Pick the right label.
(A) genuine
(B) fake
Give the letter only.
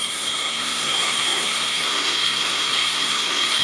B